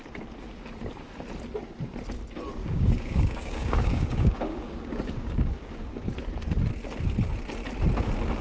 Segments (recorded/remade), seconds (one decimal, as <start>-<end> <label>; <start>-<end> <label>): 0.0-2.6 recorded; 2.6-6.1 remade; 6.1-8.4 recorded